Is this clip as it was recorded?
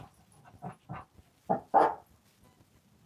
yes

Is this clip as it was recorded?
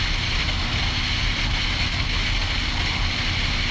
yes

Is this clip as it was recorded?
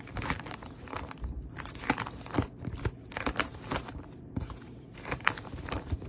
no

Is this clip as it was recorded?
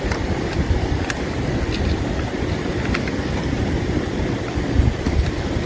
no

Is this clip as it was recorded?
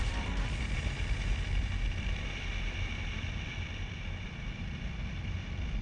no